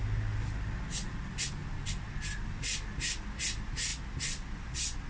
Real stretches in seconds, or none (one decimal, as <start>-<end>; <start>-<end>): 0.0-5.1

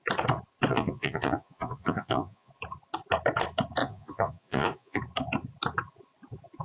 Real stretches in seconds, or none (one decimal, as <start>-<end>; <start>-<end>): 0.0-0.7; 2.5-3.8; 5.0-6.6

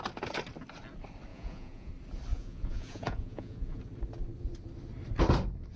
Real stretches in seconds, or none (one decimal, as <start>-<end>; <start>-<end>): 0.0-1.3; 1.9-2.3; 3.8-5.8

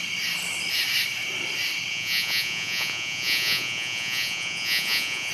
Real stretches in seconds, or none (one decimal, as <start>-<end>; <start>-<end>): 0.0-1.9

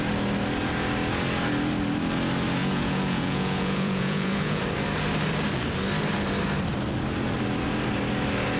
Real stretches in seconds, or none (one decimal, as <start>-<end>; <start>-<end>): 0.0-2.6; 4.6-8.6

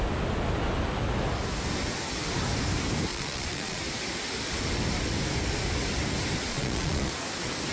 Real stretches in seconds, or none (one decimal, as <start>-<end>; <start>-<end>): 0.0-3.1; 3.8-6.5; 7.1-7.7

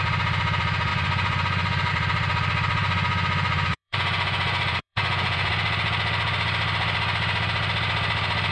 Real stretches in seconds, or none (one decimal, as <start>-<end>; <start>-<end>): 0.0-0.9; 1.9-2.8; 5.5-8.5

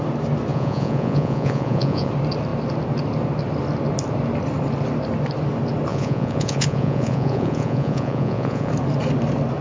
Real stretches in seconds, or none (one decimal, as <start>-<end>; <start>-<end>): 0.0-0.5; 2.1-5.9; 8.7-9.6